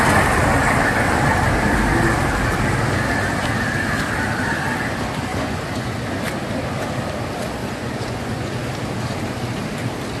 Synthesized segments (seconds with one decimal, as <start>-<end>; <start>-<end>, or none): 5.3-6.0; 7.6-8.7